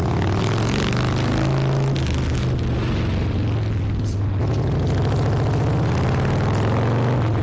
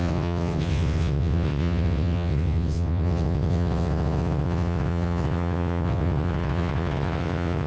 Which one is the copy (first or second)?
second